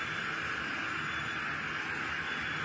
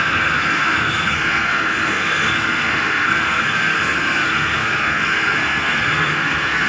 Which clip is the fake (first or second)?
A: second